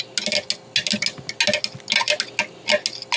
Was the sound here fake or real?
real